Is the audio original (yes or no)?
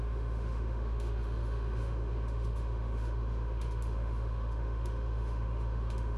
no